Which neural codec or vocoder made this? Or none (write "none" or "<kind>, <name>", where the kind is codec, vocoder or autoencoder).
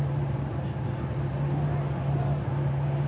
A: none